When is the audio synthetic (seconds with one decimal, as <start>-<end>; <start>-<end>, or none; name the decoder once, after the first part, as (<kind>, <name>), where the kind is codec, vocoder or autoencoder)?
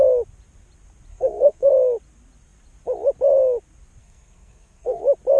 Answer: 1.1-1.7 (codec, SNAC); 4.0-5.0